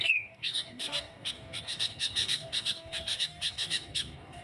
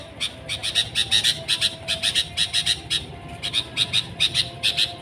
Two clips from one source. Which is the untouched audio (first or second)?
second